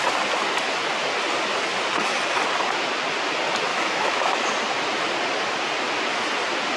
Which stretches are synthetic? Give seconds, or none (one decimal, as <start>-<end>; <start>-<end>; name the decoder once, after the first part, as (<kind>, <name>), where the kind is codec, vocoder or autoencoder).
3.7-4.5 (autoencoder, DAC-VAE)